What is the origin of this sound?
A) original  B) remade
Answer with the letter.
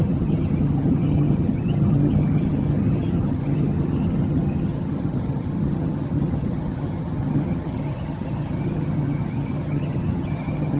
B